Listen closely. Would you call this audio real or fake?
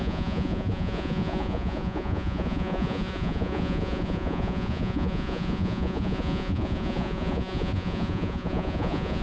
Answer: fake